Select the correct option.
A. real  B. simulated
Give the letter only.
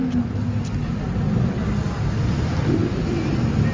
A